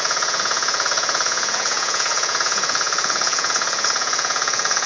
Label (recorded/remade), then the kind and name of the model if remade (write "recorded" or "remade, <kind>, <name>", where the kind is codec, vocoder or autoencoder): remade, vocoder, Vocos